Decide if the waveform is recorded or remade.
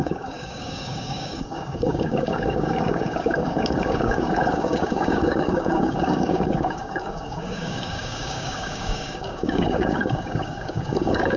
remade